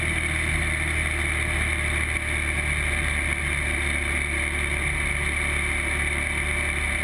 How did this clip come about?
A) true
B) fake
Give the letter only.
A